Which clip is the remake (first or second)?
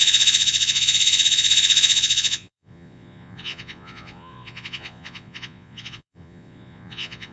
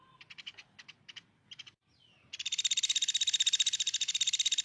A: first